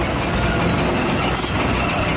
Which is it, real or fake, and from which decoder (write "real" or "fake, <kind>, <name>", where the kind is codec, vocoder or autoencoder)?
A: real